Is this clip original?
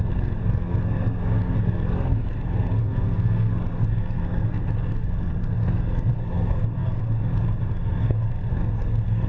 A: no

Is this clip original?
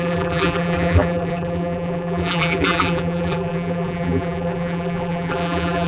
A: no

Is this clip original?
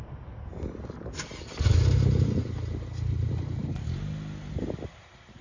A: yes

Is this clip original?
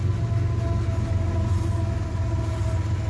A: yes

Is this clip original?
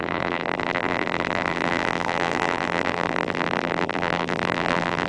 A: no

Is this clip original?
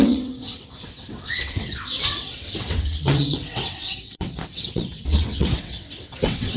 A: no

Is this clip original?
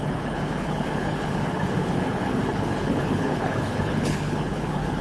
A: no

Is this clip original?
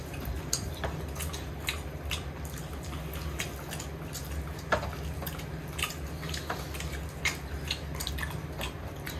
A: yes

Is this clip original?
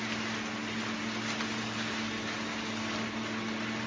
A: yes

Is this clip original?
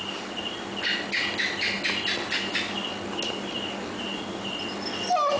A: yes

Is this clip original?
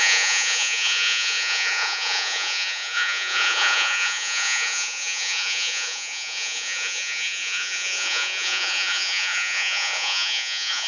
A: no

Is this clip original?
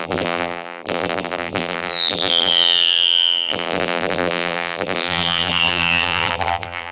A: no